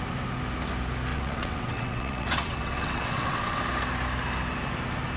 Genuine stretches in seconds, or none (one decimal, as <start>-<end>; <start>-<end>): 0.0-1.1; 3.6-5.2